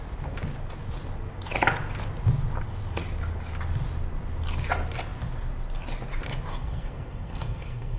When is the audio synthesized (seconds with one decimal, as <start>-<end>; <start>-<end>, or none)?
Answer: 6.5-8.0